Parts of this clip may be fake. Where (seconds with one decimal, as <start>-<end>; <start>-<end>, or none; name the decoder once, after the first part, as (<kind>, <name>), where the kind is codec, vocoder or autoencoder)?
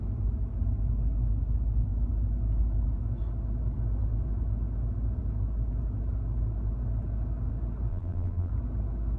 7.9-8.5 (vocoder, BigVGAN v2)